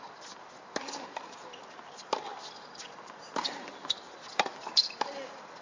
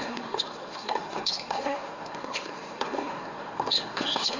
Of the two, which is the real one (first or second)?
first